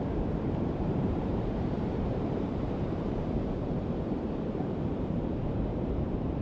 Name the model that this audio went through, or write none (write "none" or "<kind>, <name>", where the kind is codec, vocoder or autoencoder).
vocoder, BigVGAN v2